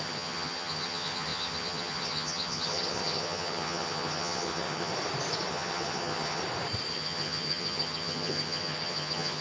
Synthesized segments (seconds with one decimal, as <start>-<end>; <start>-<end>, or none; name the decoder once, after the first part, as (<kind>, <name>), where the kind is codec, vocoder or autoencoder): 0.0-4.9 (vocoder, HiFi-GAN); 5.5-6.4; 6.9-9.4